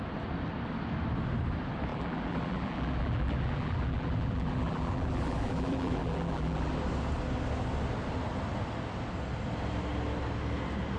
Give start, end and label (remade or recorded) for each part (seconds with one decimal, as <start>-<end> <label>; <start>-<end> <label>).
0.0-1.9 recorded; 1.9-6.7 remade; 6.7-11.0 recorded

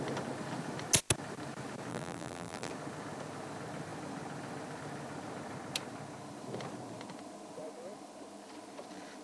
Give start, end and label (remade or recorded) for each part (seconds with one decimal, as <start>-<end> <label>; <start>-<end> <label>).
0.0-1.9 recorded; 1.9-2.7 remade; 2.7-9.2 recorded